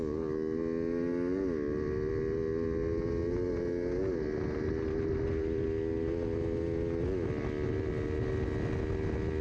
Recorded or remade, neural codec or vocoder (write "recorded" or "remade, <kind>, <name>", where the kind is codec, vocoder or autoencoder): recorded